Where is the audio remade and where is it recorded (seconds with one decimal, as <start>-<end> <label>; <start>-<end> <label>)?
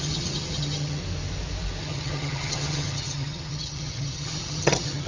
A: 0.0-1.0 remade; 1.0-1.8 recorded; 1.8-5.1 remade